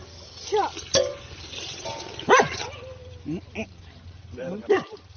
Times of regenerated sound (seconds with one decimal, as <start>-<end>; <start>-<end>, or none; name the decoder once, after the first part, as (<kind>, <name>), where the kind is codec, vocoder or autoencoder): 1.1-5.2 (vocoder, BigVGAN v2)